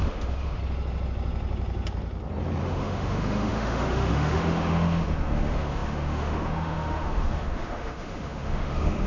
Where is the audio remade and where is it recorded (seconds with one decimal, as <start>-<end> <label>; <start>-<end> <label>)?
0.0-0.6 remade; 0.6-2.6 recorded; 2.6-9.1 remade